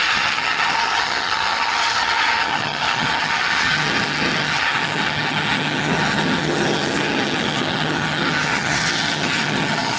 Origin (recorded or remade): remade